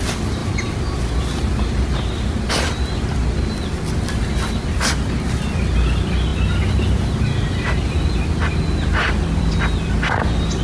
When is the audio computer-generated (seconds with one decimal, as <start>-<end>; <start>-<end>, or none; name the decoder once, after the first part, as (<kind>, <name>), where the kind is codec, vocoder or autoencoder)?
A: 0.4-2.5 (vocoder, BigVGAN v2); 6.3-7.9